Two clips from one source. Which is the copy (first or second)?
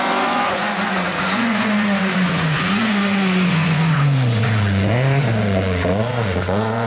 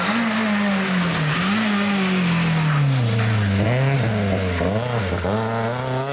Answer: first